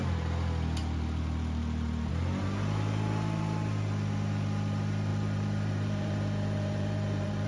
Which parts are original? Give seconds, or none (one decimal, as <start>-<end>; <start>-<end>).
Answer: 0.0-0.8; 2.1-5.1

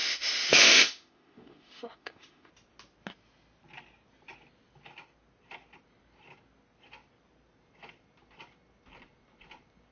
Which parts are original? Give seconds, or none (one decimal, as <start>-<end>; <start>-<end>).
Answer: 2.5-9.9

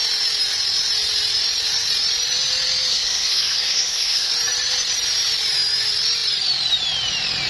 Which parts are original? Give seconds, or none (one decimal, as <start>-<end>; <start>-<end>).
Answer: 0.0-2.9; 4.3-7.5

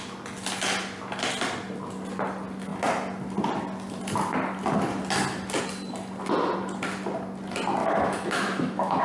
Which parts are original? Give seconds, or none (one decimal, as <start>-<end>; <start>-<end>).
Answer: 0.0-7.8

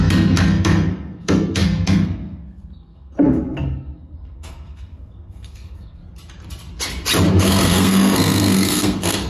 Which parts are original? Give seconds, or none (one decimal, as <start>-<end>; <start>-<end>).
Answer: 6.0-7.3

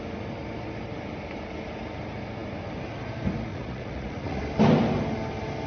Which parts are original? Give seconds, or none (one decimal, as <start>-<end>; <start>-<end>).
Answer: 0.0-3.5; 4.4-5.7